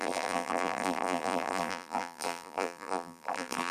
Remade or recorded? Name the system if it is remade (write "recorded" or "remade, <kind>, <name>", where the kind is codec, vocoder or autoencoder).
remade, vocoder, BigVGAN v2